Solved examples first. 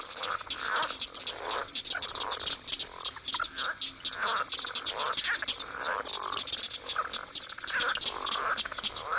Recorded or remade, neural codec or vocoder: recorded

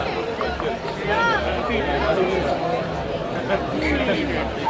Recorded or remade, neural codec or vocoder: recorded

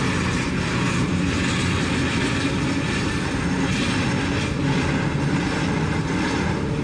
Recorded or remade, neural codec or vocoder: recorded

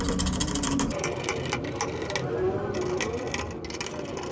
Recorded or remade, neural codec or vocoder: recorded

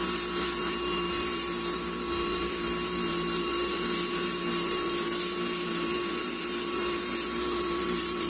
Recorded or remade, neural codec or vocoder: remade, vocoder, BigVGAN v2